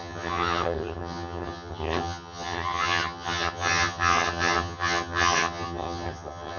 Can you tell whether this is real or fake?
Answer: fake